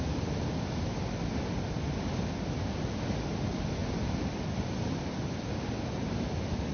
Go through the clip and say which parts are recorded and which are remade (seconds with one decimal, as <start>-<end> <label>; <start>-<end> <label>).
0.0-6.7 recorded